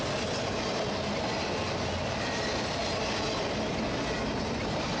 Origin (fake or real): real